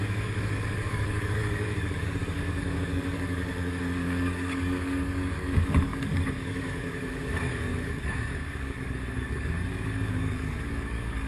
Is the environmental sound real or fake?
fake